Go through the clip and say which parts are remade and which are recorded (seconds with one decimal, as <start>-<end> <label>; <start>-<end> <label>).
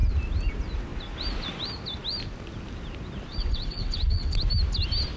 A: 0.0-3.3 recorded; 3.3-4.4 remade; 4.4-5.2 recorded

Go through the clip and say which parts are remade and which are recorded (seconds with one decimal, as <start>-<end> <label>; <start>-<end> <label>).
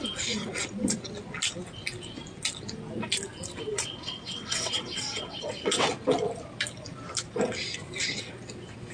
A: 0.0-3.7 recorded; 3.7-5.9 remade; 5.9-8.9 recorded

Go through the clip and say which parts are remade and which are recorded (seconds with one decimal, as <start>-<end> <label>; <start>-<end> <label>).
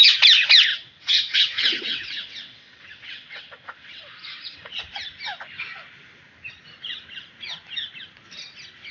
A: 0.0-0.7 recorded; 0.7-4.8 remade; 4.8-8.9 recorded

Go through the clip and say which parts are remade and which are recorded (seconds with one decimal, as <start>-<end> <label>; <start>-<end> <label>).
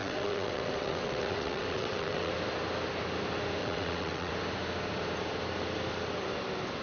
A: 0.0-2.3 remade; 2.3-3.6 recorded; 3.6-4.3 remade; 4.3-6.8 recorded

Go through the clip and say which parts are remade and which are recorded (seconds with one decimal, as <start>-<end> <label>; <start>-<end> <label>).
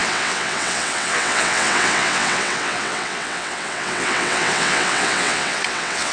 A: 0.0-6.1 remade